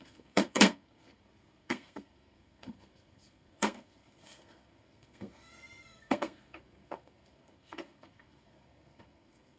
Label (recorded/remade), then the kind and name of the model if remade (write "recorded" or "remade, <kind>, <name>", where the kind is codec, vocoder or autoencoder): remade, codec, SNAC